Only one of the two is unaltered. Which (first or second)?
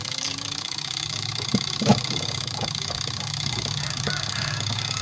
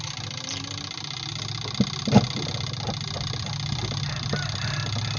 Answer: second